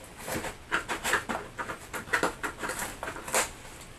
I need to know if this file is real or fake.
real